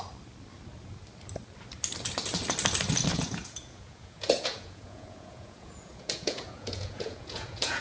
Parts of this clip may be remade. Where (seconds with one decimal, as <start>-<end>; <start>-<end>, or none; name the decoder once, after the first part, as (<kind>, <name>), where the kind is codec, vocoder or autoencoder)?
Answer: 3.1-7.8 (vocoder, Vocos)